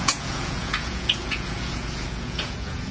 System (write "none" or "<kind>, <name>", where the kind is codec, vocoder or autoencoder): vocoder, Vocos